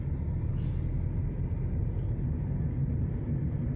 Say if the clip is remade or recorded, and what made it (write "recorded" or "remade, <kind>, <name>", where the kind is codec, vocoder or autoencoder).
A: recorded